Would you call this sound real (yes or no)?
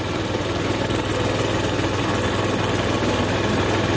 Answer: yes